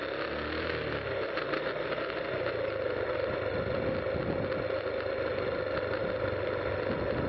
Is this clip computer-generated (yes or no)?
no